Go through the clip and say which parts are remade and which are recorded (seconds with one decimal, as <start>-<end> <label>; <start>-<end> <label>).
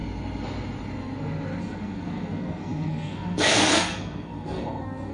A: 0.0-1.6 recorded; 1.6-5.1 remade